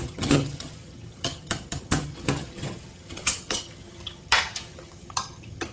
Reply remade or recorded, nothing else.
remade